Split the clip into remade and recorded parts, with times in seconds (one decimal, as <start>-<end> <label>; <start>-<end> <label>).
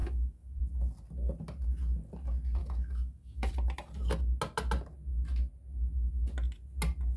0.0-0.6 remade; 0.6-2.6 recorded; 2.6-3.5 remade; 3.5-7.2 recorded